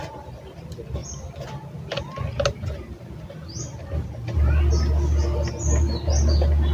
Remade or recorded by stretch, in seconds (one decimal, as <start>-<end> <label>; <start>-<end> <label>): 0.0-6.7 recorded